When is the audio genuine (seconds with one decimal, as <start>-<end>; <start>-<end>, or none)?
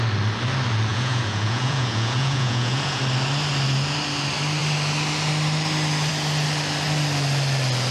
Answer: 0.0-0.9; 3.0-7.9